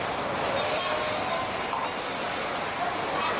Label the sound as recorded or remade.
recorded